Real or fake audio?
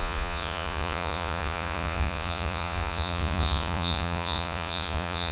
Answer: fake